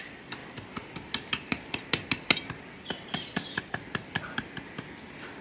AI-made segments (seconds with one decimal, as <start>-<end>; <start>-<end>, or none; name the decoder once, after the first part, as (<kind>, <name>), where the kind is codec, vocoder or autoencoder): 0.4-3.6 (vocoder, BigVGAN v2)